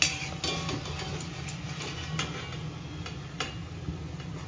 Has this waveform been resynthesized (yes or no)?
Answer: no